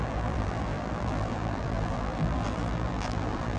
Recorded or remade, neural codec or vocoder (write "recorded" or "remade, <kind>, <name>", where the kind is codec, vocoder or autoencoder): remade, vocoder, BigVGAN v2